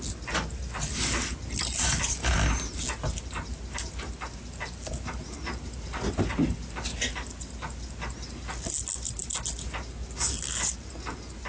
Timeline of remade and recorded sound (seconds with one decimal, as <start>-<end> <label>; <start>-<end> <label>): 0.0-11.5 recorded